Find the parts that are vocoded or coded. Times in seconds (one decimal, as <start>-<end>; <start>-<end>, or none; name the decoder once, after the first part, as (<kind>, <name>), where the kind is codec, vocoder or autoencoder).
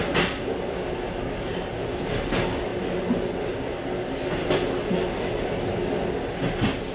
none